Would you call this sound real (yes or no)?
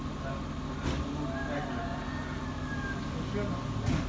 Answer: yes